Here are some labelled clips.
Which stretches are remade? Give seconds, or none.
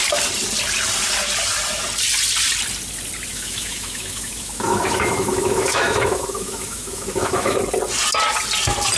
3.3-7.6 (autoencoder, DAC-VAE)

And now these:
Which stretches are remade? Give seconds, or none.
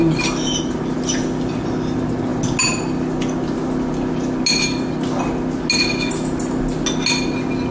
none